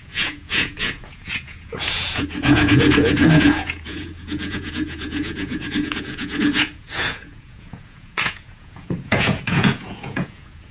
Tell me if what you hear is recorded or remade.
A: remade